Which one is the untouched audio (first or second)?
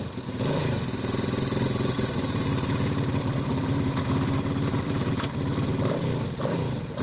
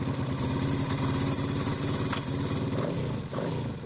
second